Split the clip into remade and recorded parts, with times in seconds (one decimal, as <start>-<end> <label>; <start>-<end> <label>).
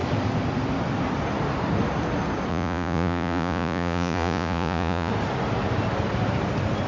0.0-2.5 recorded; 2.5-5.1 remade; 5.1-6.9 recorded